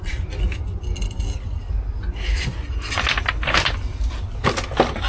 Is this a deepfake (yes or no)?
no